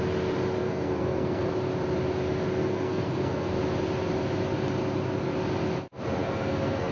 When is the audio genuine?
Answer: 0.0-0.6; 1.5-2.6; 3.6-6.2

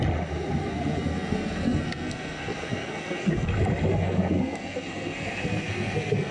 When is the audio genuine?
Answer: 0.0-0.6; 3.5-3.9

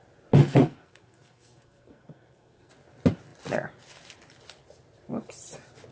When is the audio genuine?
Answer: 0.0-0.4; 2.7-5.9

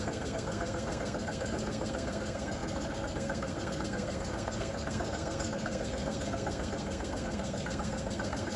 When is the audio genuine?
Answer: none

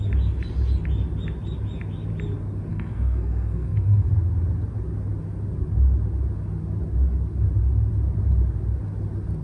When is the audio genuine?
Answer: 0.0-2.7; 4.1-9.4